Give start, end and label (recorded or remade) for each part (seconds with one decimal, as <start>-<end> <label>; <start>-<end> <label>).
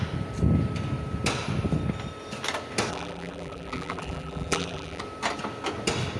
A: 0.0-2.9 recorded; 2.9-5.0 remade; 5.0-6.2 recorded